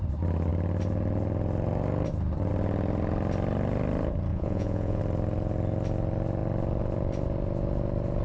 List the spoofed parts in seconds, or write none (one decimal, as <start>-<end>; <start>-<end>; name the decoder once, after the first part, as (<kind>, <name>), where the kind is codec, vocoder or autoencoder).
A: 4.3-5.0 (vocoder, Vocos)